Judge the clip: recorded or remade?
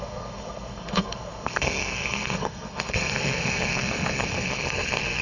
remade